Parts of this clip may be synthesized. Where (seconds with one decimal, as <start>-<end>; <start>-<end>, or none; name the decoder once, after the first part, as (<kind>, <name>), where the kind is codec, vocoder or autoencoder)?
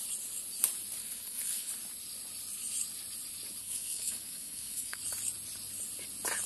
1.0-1.7 (codec, SNAC); 3.6-5.0